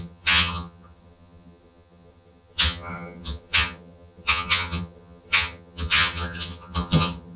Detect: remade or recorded remade